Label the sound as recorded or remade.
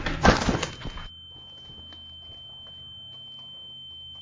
recorded